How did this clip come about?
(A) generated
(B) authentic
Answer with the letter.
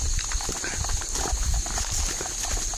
B